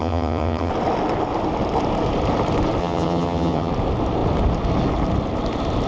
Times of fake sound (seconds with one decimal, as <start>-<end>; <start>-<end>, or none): 0.0-0.7; 2.8-3.7